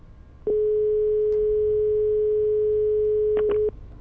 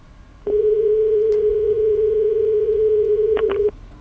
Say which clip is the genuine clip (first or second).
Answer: first